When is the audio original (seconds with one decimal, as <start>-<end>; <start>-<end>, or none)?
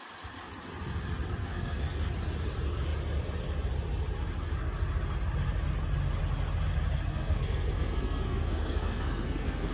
0.0-1.4; 2.1-7.1